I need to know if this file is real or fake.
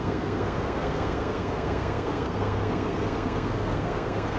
fake